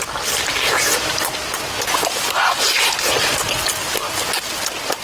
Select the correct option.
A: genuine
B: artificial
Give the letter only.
A